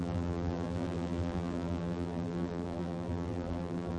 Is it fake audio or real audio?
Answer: fake